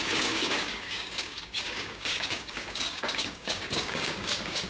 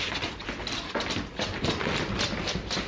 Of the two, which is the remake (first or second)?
first